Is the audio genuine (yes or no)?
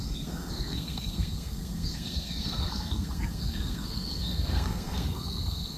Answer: no